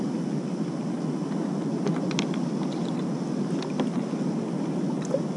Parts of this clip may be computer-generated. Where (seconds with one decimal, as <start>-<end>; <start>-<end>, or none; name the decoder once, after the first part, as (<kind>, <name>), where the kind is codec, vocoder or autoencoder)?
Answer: none